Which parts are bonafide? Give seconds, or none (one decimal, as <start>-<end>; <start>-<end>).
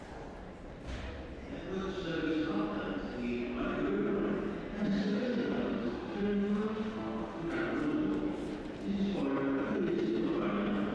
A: 0.0-5.0; 7.5-10.9